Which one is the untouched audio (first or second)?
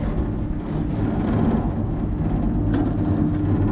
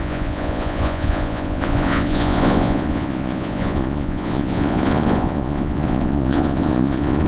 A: first